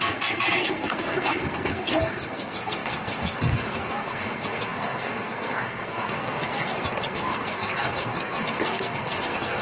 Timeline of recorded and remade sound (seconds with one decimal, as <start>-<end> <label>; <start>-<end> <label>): 0.0-9.6 remade